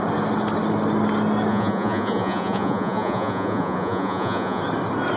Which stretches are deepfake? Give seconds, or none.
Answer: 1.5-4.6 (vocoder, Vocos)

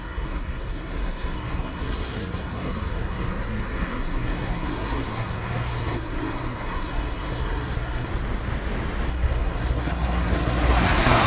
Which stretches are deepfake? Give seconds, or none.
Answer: 0.0-8.1 (codec, SNAC); 9.1-11.3

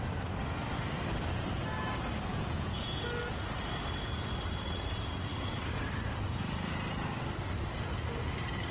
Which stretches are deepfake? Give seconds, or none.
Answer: 2.3-3.0 (vocoder, Vocos); 5.3-5.8

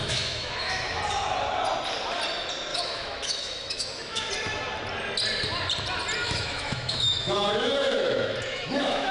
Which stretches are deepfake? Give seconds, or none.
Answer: 0.0-1.0 (autoencoder, DAC-VAE); 2.7-4.3; 6.2-9.1

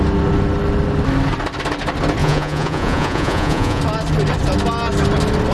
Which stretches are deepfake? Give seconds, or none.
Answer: 2.2-3.8 (vocoder, Vocos)

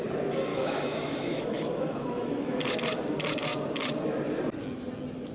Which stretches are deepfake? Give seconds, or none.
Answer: 0.5-2.6 (autoencoder, DAC-VAE)

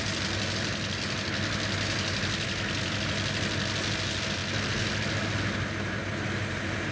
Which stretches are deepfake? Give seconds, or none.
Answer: none